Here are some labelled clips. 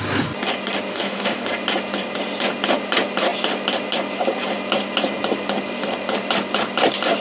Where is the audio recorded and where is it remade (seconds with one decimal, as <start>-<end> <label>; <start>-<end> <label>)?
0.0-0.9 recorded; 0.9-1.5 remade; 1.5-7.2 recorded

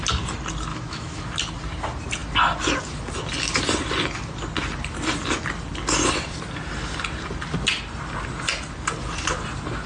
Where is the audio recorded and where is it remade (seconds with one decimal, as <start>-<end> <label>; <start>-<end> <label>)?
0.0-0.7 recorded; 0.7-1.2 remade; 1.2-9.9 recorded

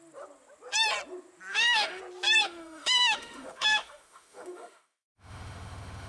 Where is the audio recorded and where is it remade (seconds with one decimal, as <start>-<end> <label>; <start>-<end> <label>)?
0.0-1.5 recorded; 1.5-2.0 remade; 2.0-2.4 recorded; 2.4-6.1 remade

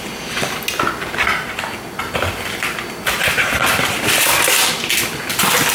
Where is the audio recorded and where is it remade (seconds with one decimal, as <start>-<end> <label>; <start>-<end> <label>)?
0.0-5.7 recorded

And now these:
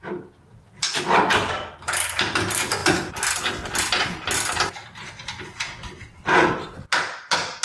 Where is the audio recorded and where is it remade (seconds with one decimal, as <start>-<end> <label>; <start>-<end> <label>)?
0.0-7.6 recorded

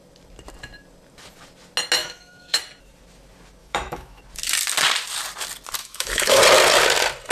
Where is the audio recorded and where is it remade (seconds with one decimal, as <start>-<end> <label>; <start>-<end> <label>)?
0.0-2.0 recorded; 2.0-2.6 remade; 2.6-3.6 recorded; 3.6-4.2 remade; 4.2-5.8 recorded; 5.8-6.4 remade; 6.4-7.3 recorded